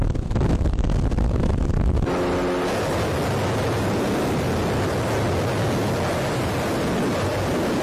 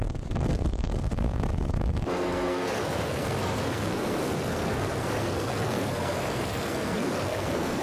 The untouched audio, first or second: first